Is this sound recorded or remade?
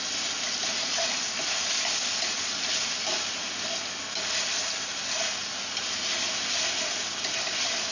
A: recorded